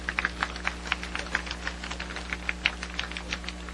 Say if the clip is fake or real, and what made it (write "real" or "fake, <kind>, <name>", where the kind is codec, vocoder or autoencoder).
real